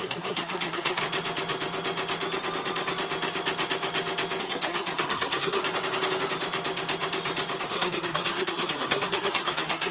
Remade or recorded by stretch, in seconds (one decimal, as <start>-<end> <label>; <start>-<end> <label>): 0.0-1.0 remade; 1.0-4.4 recorded; 4.4-5.6 remade; 5.6-7.6 recorded; 7.6-9.9 remade